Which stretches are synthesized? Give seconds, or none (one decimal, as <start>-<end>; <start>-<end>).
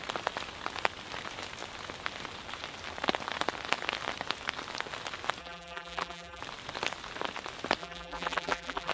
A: 5.4-6.4; 7.8-8.9